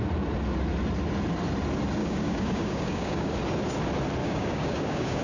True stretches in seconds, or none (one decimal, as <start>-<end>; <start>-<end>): 0.0-2.0; 3.3-4.2